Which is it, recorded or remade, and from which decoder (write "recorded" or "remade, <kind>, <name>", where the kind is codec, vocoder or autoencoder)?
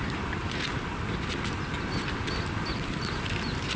recorded